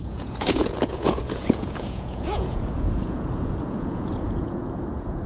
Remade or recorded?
remade